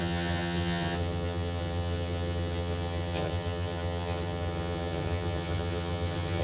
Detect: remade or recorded remade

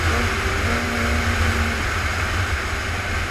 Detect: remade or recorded recorded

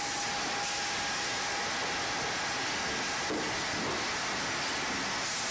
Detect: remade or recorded recorded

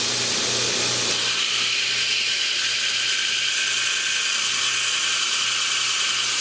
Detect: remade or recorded recorded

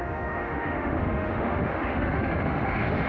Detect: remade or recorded remade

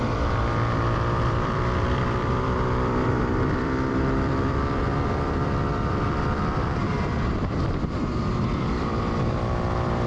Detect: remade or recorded remade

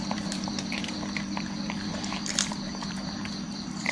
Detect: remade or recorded remade